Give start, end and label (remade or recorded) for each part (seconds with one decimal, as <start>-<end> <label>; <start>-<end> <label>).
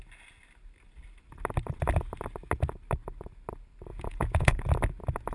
0.0-3.9 recorded; 3.9-4.6 remade; 4.6-5.3 recorded